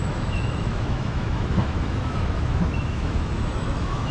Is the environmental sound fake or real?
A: fake